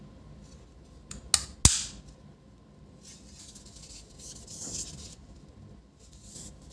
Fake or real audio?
real